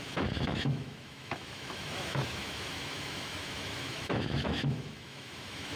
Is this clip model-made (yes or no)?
yes